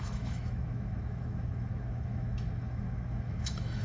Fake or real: fake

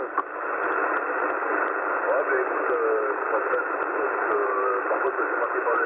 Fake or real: real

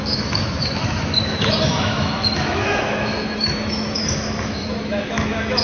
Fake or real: fake